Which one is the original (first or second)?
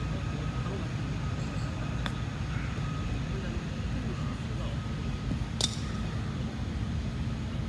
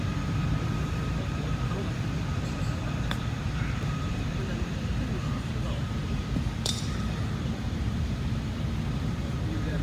first